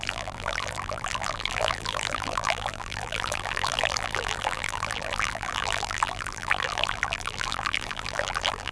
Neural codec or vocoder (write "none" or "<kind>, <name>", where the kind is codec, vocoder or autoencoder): vocoder, BigVGAN v2